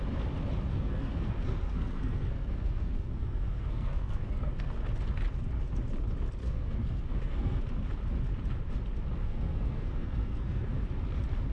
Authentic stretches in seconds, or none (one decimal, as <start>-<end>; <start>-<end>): 0.0-0.7; 4.8-6.4; 7.6-9.2; 10.8-11.5